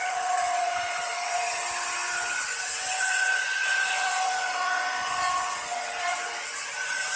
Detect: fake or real fake